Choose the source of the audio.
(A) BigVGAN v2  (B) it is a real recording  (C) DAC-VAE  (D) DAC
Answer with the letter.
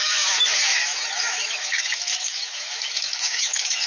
C